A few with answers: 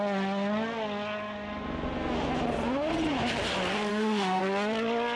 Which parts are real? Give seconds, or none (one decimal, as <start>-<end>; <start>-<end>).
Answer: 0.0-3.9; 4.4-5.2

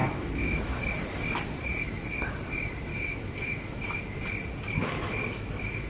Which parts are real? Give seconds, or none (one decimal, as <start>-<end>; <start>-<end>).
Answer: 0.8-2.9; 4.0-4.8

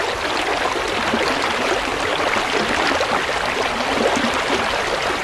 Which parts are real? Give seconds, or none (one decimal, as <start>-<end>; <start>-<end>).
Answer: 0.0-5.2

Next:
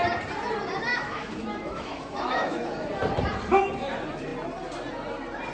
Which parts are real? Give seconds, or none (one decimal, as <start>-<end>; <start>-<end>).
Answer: 0.0-0.9; 2.9-5.5